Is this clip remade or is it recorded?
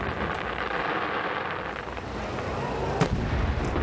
recorded